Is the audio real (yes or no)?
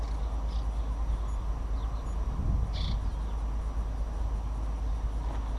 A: yes